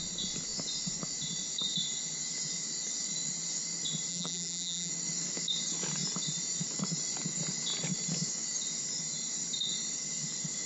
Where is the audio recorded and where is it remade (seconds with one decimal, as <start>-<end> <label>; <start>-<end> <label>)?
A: 0.0-4.1 recorded; 4.1-4.9 remade; 4.9-10.7 recorded